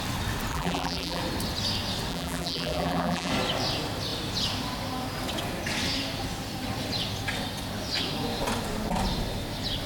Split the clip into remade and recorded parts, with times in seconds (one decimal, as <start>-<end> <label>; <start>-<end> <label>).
0.0-0.5 recorded; 0.5-1.2 remade; 1.2-2.1 recorded; 2.1-3.3 remade; 3.3-9.9 recorded